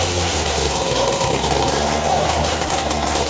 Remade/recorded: remade